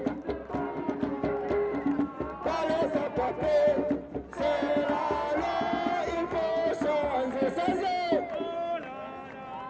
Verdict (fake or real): real